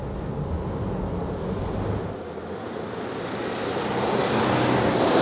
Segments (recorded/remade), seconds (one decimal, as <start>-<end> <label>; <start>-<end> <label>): 0.0-5.2 recorded

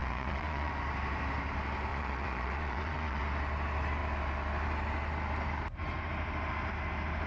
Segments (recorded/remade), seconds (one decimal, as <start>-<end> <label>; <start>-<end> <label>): 0.0-0.7 remade; 0.7-1.9 recorded; 1.9-3.2 remade; 3.2-7.3 recorded

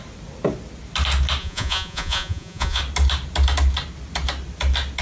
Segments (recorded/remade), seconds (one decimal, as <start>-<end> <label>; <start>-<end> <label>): 0.0-1.4 recorded; 1.4-2.8 remade; 2.8-5.0 recorded

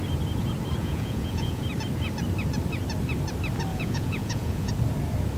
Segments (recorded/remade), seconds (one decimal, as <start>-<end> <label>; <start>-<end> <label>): 0.0-0.8 recorded; 0.8-1.6 remade; 1.6-3.7 recorded; 3.7-4.7 remade; 4.7-5.4 recorded

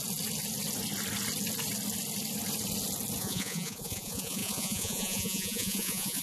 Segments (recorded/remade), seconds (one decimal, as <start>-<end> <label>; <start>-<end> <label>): 0.0-3.2 recorded; 3.2-6.2 remade